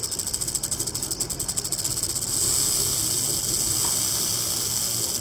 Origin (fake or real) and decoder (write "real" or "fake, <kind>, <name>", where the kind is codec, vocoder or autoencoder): real